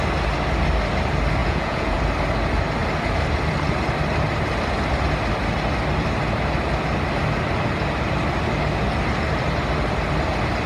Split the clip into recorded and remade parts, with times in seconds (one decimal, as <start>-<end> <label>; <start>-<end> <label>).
0.0-1.4 recorded; 1.4-2.0 remade; 2.0-10.7 recorded